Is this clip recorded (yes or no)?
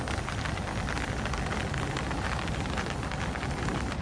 yes